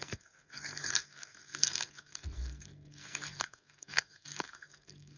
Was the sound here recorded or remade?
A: remade